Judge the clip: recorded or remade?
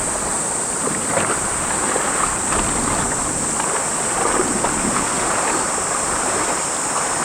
recorded